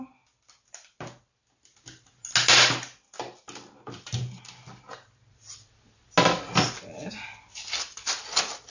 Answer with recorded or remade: recorded